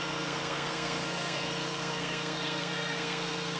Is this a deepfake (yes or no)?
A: yes